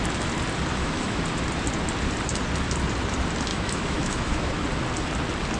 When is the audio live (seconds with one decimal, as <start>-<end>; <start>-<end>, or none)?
0.0-0.7; 1.2-3.5; 4.5-5.6